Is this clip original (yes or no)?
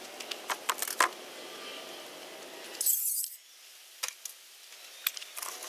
yes